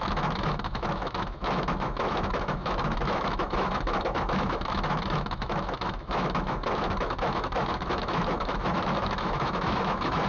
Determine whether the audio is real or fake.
fake